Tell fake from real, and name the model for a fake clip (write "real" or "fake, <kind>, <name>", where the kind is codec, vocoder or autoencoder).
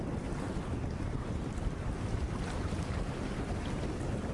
real